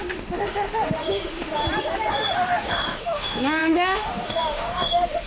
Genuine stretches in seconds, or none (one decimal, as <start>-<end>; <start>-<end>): 1.6-2.1